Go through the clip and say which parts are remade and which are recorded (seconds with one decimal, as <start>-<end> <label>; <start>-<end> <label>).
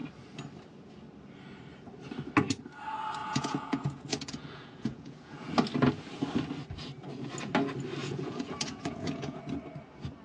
0.0-3.2 recorded; 3.2-5.5 remade; 5.5-8.0 recorded; 8.0-9.4 remade; 9.4-10.2 recorded